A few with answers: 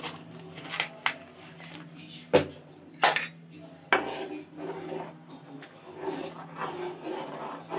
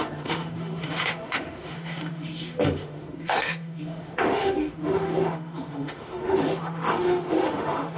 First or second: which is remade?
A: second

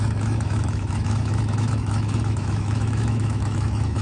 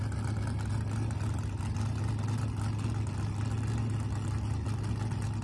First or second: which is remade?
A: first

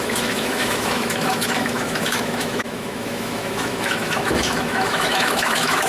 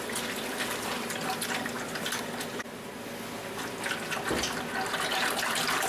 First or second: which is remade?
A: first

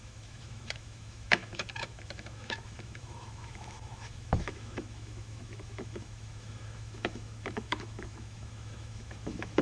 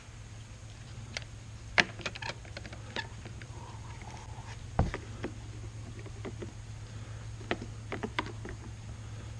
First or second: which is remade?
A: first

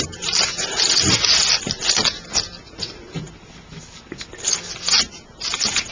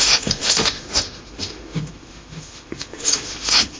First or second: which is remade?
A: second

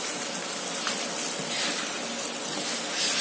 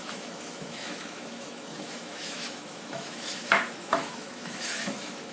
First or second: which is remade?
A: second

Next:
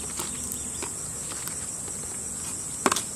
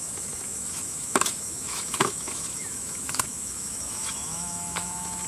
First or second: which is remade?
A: second